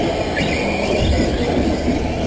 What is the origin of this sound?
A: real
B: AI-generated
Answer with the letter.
A